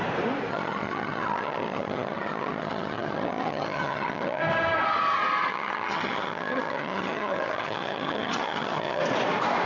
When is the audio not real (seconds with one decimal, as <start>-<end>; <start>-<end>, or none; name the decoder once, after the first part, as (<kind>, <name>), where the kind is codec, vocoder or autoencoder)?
0.5-4.4 (vocoder, HiFi-GAN); 5.5-9.0